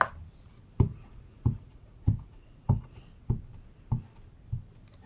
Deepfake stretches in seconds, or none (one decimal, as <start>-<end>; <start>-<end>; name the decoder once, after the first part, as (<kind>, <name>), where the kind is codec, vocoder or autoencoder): 0.9-3.0 (vocoder, Vocos)